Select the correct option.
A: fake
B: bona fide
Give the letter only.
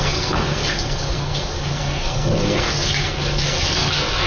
A